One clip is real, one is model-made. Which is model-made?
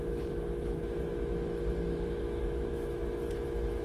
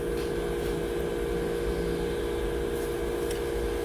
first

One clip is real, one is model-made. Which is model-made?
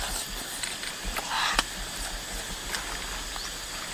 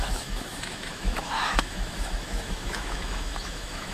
second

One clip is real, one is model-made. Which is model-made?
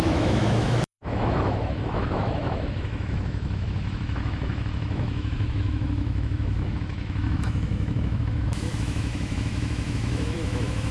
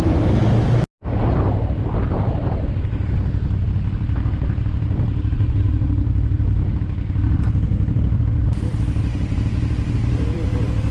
first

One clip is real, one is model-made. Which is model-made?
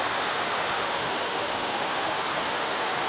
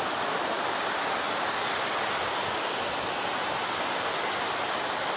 first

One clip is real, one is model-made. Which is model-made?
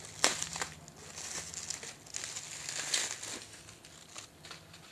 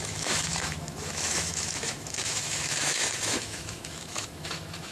second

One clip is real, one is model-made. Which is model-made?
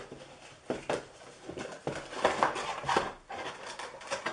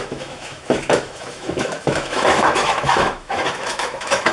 second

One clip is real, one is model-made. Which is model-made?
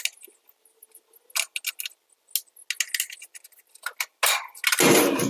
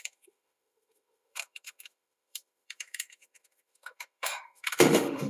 second